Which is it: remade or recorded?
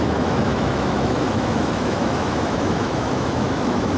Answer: remade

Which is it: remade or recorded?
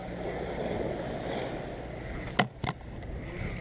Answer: recorded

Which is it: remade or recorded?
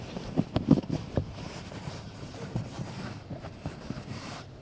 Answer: remade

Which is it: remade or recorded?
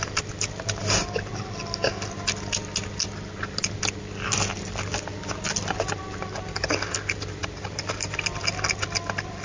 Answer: recorded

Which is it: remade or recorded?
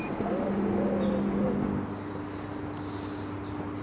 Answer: recorded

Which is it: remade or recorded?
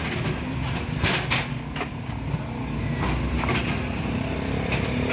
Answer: recorded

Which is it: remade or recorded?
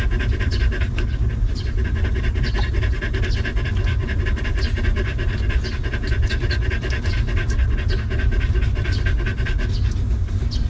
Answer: recorded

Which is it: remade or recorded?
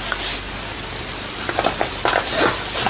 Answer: recorded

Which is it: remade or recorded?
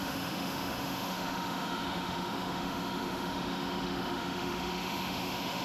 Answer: remade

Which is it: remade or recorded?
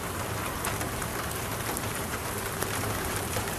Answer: remade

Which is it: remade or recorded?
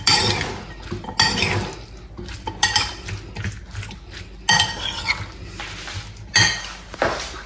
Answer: recorded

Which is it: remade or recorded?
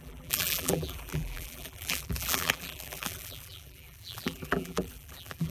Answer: remade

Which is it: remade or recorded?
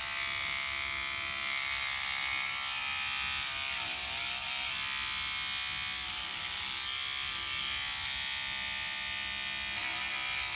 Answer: recorded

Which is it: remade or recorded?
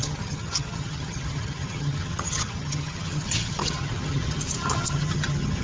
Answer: remade